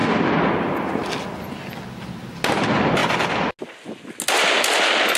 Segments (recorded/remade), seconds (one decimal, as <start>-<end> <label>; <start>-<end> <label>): 0.0-5.2 recorded